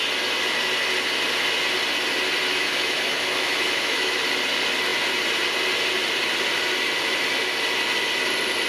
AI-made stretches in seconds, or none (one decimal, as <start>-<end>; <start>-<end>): 2.5-4.1